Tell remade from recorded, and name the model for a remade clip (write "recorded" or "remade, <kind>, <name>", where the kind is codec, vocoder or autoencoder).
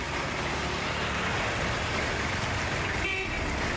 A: recorded